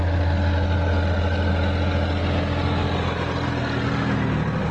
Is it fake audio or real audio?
real